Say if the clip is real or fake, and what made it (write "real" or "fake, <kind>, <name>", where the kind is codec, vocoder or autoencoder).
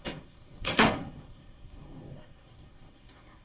fake, codec, SNAC